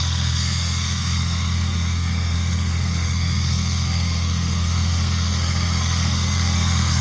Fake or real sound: fake